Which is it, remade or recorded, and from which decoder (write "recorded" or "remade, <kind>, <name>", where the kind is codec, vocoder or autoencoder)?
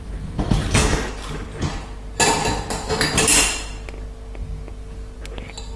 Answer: recorded